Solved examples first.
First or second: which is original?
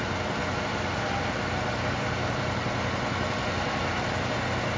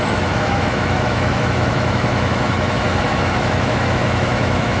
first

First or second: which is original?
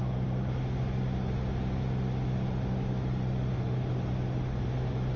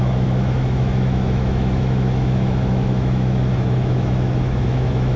first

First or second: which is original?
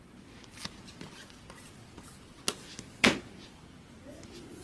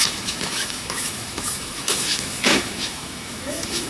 first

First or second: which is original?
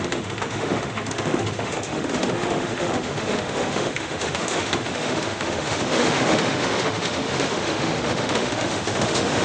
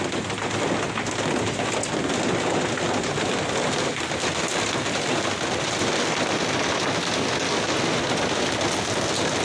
second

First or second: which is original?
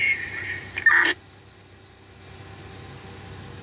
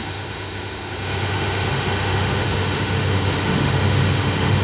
first